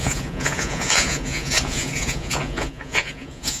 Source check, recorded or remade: remade